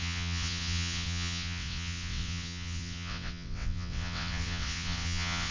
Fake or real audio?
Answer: fake